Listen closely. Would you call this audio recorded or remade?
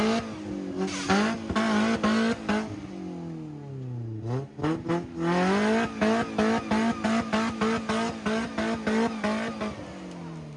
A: recorded